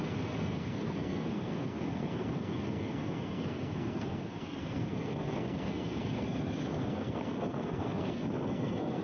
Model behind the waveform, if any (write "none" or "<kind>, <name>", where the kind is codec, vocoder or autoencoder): codec, SNAC